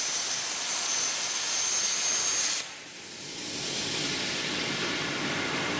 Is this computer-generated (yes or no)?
yes